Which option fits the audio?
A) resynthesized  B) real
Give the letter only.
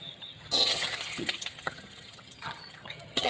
A